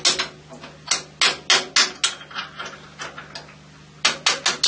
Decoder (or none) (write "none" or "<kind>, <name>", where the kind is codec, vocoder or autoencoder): none